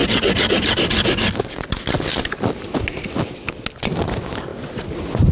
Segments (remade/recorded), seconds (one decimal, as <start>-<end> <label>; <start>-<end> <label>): 0.0-5.3 recorded